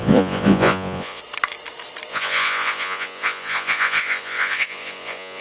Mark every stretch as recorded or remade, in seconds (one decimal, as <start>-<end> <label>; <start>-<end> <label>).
0.0-1.2 remade; 1.2-2.1 recorded; 2.1-5.4 remade